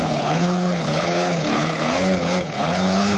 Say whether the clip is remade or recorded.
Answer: remade